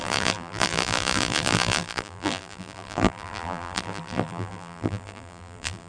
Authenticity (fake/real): fake